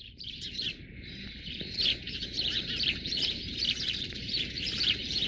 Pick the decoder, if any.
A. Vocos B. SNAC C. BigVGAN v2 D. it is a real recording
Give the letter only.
C